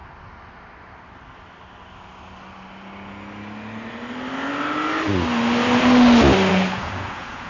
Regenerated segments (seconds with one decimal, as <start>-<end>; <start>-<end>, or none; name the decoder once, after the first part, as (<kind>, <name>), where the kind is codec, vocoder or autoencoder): 6.5-7.5 (vocoder, Vocos)